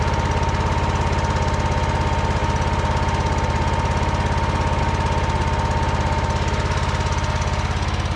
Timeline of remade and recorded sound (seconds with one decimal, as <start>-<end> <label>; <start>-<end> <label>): 0.0-8.2 recorded